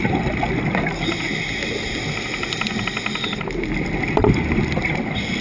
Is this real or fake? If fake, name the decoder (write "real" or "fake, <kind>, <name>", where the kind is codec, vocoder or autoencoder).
real